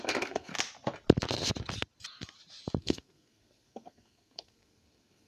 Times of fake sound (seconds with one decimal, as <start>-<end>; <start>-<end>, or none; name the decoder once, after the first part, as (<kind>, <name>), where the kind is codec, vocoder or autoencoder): 0.0-0.5 (codec, SNAC); 2.8-5.3